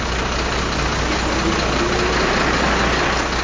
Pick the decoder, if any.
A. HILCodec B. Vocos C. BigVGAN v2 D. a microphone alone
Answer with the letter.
D